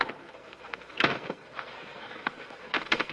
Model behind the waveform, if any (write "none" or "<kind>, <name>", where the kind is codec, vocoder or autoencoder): codec, SNAC